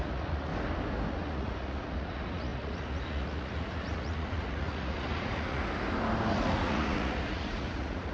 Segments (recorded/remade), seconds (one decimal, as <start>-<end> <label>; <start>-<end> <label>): 0.0-0.5 remade; 0.5-1.1 recorded; 1.1-5.6 remade; 5.6-6.3 recorded; 6.3-8.1 remade